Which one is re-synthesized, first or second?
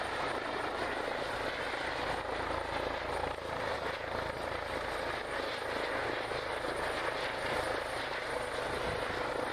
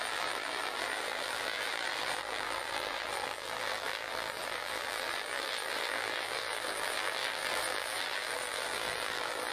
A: second